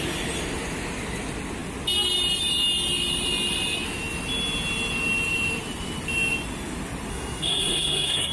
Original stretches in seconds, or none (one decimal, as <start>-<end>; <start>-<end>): 0.0-7.1